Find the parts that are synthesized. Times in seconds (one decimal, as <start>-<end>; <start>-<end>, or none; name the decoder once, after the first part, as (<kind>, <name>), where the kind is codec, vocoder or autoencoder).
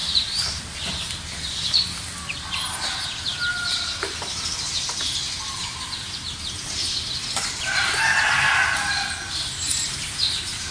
0.0-0.6 (vocoder, BigVGAN v2)